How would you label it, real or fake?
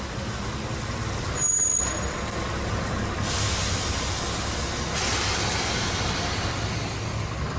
real